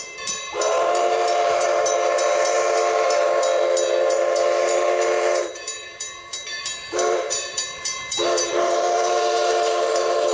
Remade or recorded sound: remade